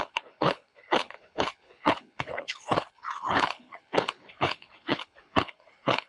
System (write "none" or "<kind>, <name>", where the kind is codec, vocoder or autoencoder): codec, HILCodec